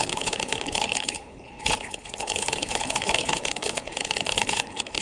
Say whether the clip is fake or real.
fake